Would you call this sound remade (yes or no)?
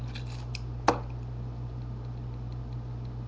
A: no